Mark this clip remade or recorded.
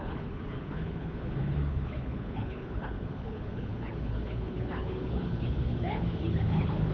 remade